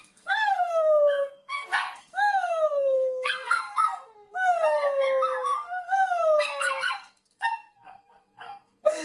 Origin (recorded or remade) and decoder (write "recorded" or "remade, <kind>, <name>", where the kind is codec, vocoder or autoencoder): remade, codec, SNAC